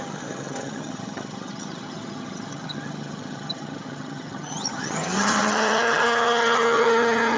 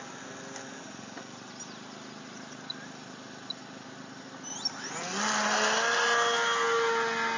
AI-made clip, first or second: first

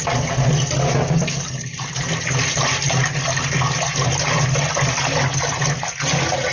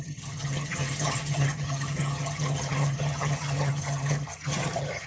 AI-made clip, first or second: second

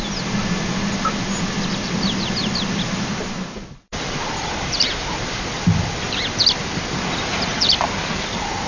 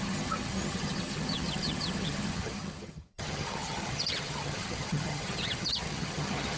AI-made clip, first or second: second